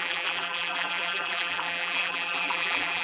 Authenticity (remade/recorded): remade